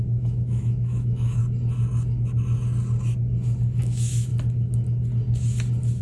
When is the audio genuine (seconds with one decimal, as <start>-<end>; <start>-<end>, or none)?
1.4-3.8; 4.3-6.0